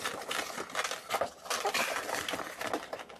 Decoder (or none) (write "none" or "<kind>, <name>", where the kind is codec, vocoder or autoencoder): none